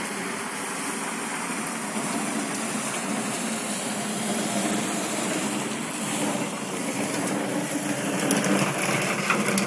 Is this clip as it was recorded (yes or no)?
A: yes